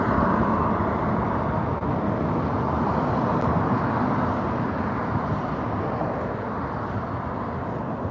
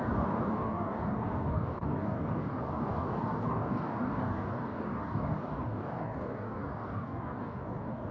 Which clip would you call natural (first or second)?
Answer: first